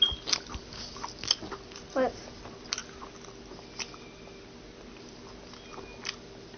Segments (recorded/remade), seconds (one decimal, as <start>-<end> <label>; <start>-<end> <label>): 0.0-6.6 recorded